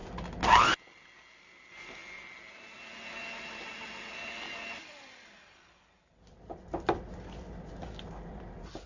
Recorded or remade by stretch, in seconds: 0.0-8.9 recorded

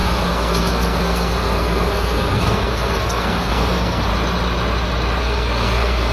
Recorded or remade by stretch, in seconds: 0.0-4.1 remade; 4.1-5.2 recorded; 5.2-6.1 remade

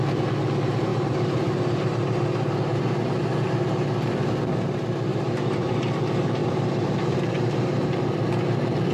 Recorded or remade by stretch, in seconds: 0.0-0.9 recorded; 0.9-4.1 remade; 4.1-5.1 recorded; 5.1-6.0 remade; 6.0-6.4 recorded; 6.4-8.3 remade; 8.3-8.9 recorded

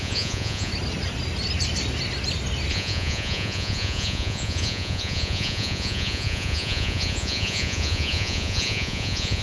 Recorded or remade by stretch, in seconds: 0.0-0.7 remade; 0.7-2.7 recorded; 2.7-9.4 remade

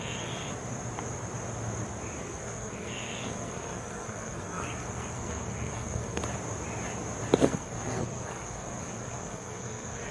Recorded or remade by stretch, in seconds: 0.0-0.4 remade; 0.4-2.2 recorded; 2.2-6.2 remade; 6.2-7.4 recorded; 7.4-10.1 remade

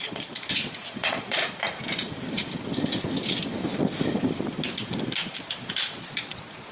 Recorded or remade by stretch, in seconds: 0.0-1.4 remade; 1.4-5.4 recorded; 5.4-6.7 remade